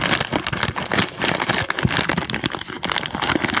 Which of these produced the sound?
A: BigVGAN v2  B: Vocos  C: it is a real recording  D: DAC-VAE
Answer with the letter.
C